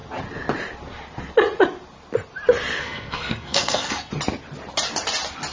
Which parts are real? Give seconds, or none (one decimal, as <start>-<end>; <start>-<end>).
0.0-2.8; 4.1-5.5